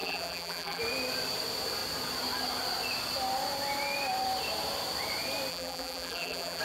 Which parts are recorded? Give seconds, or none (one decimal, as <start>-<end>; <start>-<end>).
0.8-5.5